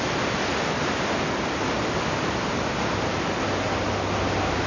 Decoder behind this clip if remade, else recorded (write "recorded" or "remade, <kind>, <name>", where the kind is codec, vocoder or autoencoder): recorded